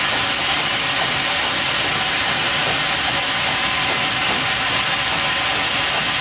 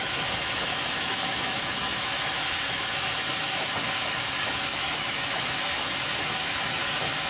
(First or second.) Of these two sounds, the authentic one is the first